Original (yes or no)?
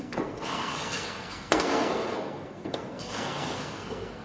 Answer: no